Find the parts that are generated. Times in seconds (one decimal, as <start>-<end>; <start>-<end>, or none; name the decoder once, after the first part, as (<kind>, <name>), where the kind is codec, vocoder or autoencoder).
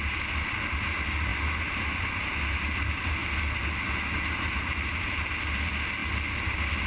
none